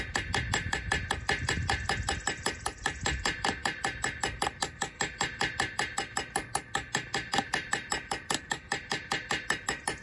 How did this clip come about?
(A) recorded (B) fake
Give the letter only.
A